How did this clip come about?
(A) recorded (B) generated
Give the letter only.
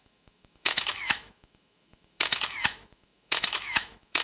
B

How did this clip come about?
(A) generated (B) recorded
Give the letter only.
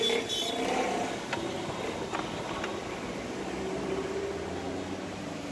B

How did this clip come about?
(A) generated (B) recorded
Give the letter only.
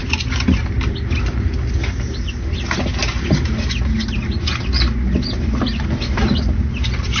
B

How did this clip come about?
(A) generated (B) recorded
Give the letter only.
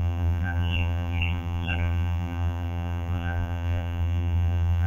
A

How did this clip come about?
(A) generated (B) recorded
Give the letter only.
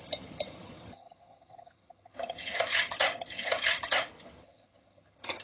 A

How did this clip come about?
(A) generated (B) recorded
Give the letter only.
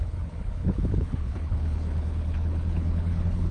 A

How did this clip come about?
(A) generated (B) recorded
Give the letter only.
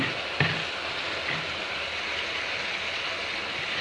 B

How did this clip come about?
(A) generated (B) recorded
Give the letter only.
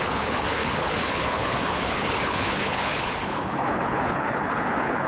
A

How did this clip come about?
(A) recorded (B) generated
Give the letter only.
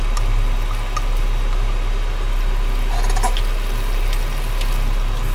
A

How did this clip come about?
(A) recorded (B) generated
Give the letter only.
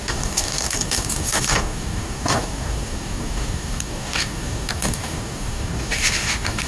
B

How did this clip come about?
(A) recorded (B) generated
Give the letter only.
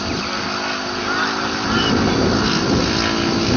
A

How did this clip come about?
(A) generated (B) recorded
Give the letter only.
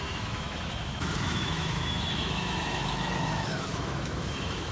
A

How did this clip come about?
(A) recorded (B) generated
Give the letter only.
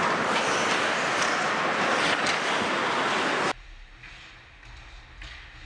A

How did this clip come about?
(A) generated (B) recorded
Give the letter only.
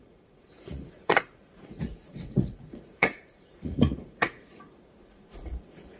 A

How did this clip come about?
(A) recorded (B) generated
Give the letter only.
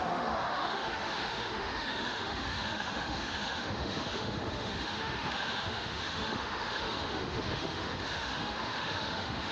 B